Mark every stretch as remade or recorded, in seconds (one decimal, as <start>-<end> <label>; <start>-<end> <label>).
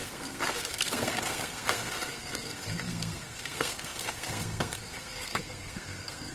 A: 0.0-6.3 remade